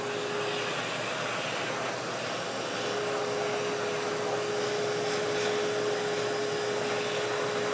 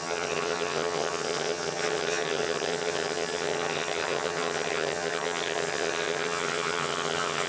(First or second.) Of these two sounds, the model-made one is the second